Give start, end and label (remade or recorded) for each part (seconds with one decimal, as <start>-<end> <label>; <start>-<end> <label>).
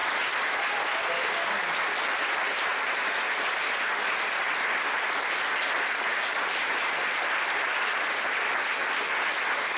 0.0-9.8 recorded